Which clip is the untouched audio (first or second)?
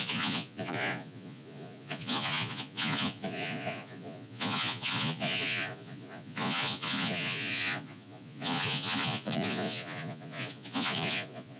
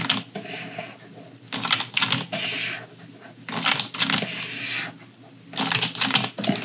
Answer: second